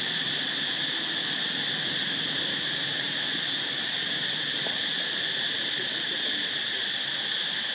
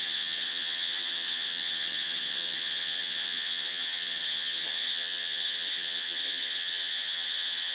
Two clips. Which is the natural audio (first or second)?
first